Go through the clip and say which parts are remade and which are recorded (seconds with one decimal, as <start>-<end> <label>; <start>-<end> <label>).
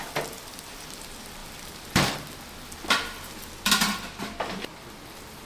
0.0-5.5 recorded